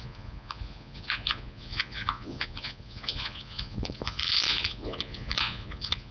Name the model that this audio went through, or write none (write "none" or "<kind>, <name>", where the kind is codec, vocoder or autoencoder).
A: vocoder, Vocos